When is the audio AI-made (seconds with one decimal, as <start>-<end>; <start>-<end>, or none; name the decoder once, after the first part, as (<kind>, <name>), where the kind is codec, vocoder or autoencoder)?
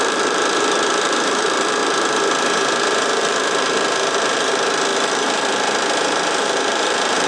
0.0-1.8 (vocoder, BigVGAN v2); 3.2-7.3